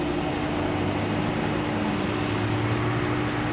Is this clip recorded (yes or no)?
yes